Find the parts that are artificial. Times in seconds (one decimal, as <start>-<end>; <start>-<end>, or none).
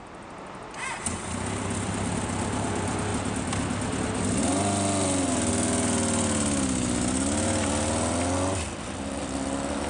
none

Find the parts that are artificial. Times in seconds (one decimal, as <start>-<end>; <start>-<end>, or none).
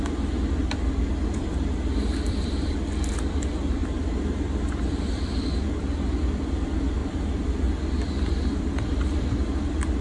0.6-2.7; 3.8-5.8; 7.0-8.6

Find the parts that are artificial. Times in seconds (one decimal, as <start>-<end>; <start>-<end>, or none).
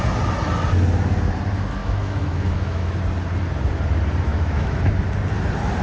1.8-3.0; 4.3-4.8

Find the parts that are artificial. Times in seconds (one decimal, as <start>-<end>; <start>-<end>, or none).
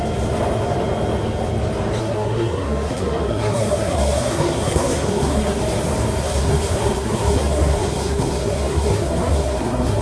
2.0-5.6; 6.2-10.0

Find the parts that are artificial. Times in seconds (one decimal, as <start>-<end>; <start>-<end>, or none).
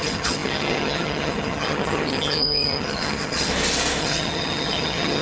0.0-3.5; 4.0-5.2